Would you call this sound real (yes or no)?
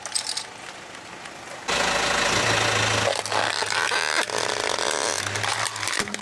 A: yes